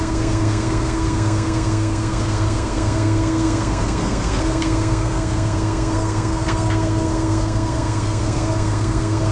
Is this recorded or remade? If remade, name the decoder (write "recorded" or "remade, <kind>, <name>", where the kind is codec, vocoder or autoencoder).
remade, codec, SNAC